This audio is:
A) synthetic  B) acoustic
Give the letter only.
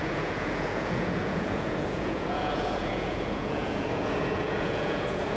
A